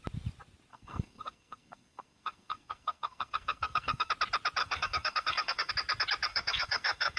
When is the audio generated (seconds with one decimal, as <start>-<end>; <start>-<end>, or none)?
0.7-4.1; 4.6-5.7; 6.3-7.2